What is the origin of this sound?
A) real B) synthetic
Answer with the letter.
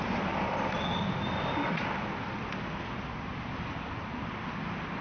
A